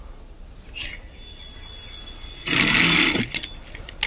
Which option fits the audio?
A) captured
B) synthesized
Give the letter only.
A